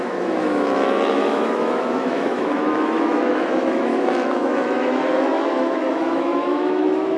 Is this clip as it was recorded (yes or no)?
no